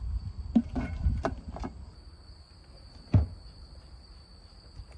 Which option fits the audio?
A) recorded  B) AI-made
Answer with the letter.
A